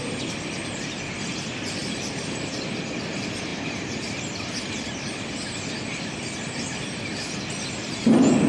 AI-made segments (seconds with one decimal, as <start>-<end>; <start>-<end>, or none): none